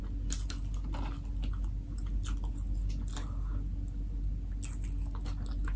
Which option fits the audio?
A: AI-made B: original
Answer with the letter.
B